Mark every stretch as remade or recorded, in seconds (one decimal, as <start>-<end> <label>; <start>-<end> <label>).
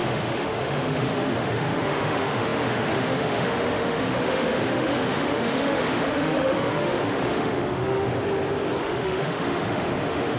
0.0-8.1 remade; 8.1-8.8 recorded; 8.8-10.4 remade